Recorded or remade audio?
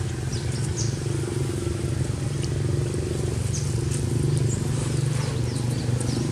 recorded